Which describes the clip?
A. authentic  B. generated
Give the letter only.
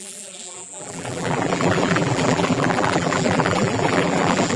B